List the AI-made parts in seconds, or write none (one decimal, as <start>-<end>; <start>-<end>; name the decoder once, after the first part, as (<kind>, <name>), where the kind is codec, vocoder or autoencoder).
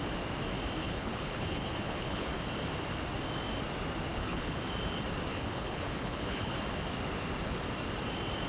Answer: 0.8-2.3 (codec, HILCodec); 4.1-4.6; 5.3-6.6